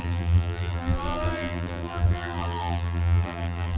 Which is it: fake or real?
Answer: fake